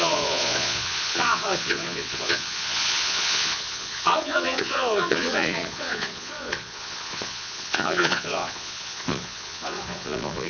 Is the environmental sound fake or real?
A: fake